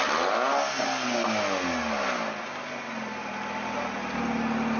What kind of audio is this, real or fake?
real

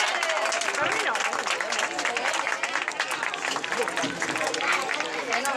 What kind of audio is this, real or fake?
real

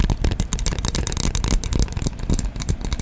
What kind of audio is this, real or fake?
real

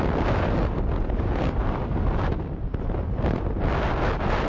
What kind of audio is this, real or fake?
real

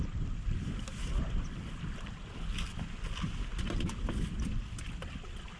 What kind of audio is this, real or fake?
real